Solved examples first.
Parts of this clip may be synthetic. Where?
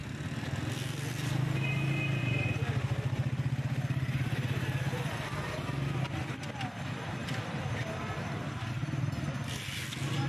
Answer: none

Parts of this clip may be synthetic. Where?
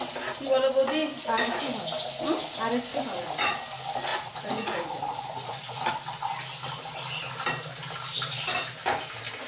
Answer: 2.9-3.6 (vocoder, Vocos); 4.1-5.9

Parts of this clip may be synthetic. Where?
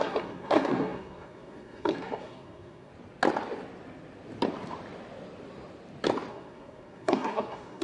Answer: 0.0-2.9 (codec, SNAC); 6.3-7.8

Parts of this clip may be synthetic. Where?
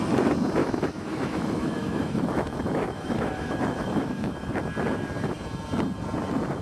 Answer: 0.6-4.6 (autoencoder, DAC-VAE)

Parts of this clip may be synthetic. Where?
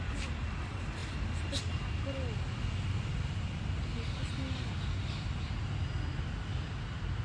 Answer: none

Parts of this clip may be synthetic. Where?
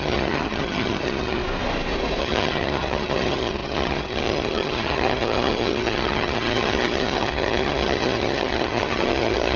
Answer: 0.0-1.4 (vocoder, HiFi-GAN); 2.2-9.6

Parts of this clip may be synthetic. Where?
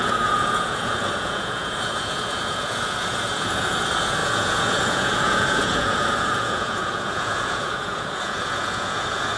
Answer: 0.0-9.4 (vocoder, Vocos)